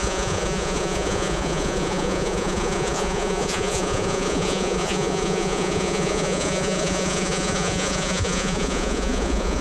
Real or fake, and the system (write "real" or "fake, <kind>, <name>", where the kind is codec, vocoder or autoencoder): fake, vocoder, Vocos